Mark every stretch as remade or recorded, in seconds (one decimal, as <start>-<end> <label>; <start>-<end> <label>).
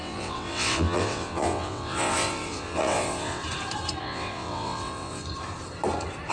0.0-3.4 remade; 3.4-4.0 recorded; 4.0-5.2 remade; 5.2-6.3 recorded